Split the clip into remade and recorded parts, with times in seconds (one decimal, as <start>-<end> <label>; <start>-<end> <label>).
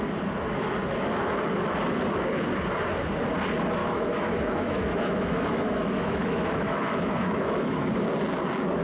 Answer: 0.0-3.8 recorded; 3.8-7.9 remade; 7.9-8.8 recorded